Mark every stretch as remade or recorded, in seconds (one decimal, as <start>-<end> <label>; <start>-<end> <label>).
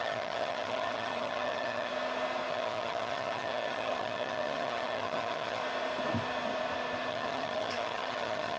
0.0-1.9 remade; 1.9-2.5 recorded; 2.5-5.6 remade; 5.6-7.1 recorded; 7.1-8.6 remade